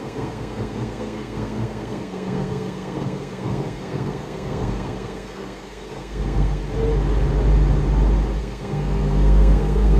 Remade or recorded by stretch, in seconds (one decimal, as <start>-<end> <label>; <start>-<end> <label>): 0.0-6.6 remade; 6.6-8.4 recorded; 8.4-10.0 remade

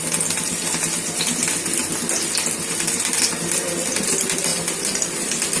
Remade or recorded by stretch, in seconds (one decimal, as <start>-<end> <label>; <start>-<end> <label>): 0.0-5.6 recorded

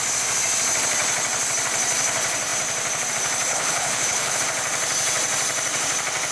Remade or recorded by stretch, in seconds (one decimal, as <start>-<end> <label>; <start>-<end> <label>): 0.0-3.5 recorded; 3.5-4.4 remade; 4.4-6.3 recorded

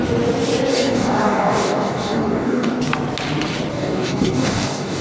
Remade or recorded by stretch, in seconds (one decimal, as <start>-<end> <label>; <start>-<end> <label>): 0.0-0.7 recorded; 0.7-2.8 remade; 2.8-3.7 recorded; 3.7-5.0 remade

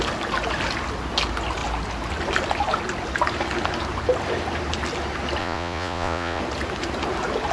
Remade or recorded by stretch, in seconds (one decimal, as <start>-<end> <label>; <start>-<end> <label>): 0.0-5.4 recorded; 5.4-6.4 remade; 6.4-7.5 recorded